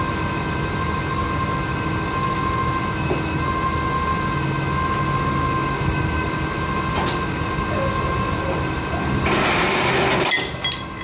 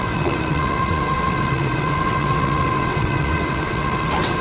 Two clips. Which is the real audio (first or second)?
first